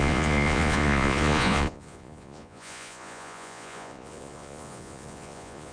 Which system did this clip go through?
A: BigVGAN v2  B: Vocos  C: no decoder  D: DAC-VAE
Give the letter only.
B